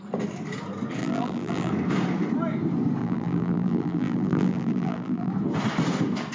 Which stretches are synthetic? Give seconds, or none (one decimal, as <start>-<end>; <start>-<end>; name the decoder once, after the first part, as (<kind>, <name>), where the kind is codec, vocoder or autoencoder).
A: 1.0-1.7 (vocoder, BigVGAN v2); 3.0-5.3